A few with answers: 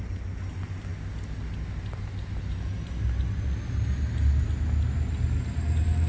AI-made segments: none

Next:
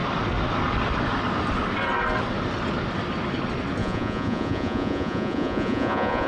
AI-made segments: 3.8-6.3 (vocoder, Vocos)

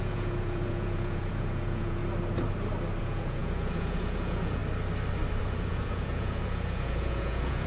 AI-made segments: 0.0-2.0 (vocoder, Vocos); 3.0-4.6; 5.4-7.7

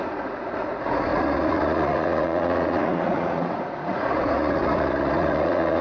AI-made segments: 0.0-5.8 (vocoder, Vocos)

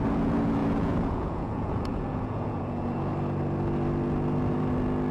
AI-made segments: 0.0-3.1 (vocoder, Vocos)

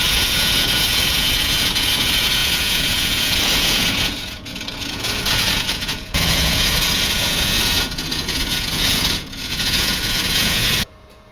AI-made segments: 0.0-11.3 (vocoder, Vocos)

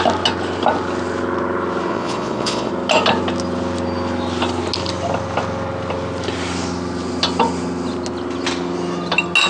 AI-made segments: 1.9-2.7 (vocoder, Vocos)